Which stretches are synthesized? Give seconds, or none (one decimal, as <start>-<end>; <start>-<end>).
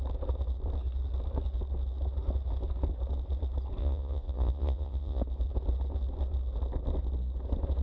3.8-5.2